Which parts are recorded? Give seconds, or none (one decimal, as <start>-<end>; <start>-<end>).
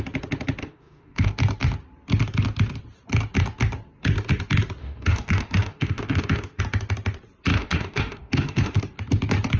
0.0-0.6; 1.3-4.8; 6.6-7.5; 8.8-9.6